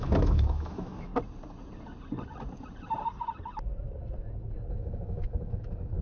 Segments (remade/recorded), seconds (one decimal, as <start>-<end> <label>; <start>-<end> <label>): 0.0-1.1 remade; 1.1-4.7 recorded; 4.7-6.0 remade